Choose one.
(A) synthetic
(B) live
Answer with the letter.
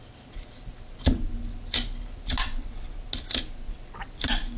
B